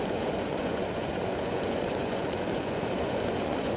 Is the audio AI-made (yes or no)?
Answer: yes